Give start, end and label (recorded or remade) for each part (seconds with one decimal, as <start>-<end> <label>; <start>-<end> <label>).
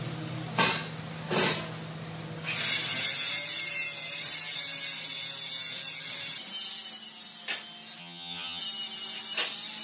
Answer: 0.0-8.0 recorded; 8.0-8.6 remade; 8.6-9.8 recorded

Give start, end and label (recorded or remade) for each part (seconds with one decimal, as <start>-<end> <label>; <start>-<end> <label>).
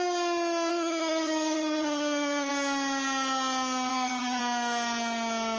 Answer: 0.0-0.7 recorded; 0.7-2.5 remade; 2.5-3.9 recorded; 3.9-4.4 remade; 4.4-5.6 recorded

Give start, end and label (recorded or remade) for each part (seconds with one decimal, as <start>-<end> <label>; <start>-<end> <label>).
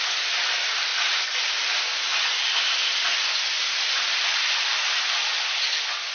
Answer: 0.0-6.1 recorded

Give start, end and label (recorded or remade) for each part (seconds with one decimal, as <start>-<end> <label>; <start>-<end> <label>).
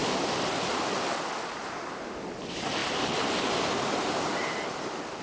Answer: 0.0-5.2 recorded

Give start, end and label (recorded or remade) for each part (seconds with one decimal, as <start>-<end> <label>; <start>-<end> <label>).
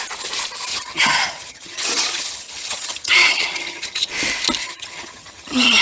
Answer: 0.0-0.7 recorded; 0.7-4.1 remade; 4.1-4.6 recorded; 4.6-5.8 remade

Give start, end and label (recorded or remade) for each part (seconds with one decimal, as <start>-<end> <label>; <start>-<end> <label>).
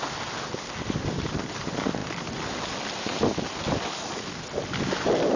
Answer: 0.0-5.4 recorded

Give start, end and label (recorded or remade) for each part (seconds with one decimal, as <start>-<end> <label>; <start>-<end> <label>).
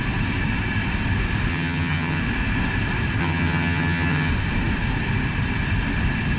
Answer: 0.0-1.5 recorded; 1.5-2.2 remade; 2.2-3.2 recorded; 3.2-4.3 remade; 4.3-6.4 recorded